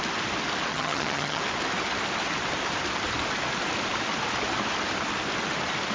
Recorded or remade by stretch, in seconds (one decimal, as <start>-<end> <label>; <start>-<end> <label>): 0.0-0.7 recorded; 0.7-1.4 remade; 1.4-5.9 recorded